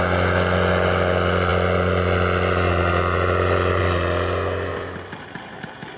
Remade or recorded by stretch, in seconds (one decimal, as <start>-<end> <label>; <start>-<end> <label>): 0.0-4.7 recorded; 4.7-6.0 remade